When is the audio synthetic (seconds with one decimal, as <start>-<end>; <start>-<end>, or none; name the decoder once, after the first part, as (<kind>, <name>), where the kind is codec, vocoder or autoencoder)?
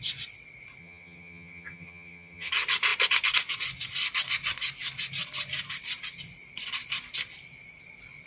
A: 0.8-2.5 (vocoder, HiFi-GAN)